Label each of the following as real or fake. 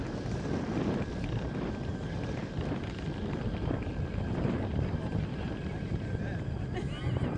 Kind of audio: real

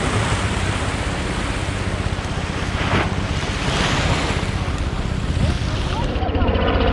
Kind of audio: real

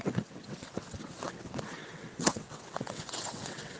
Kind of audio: fake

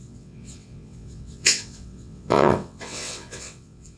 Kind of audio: fake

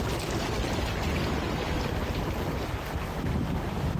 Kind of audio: real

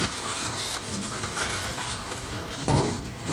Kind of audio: fake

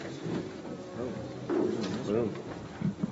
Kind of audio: real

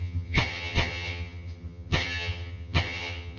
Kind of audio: fake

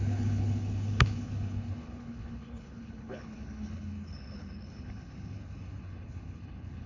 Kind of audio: fake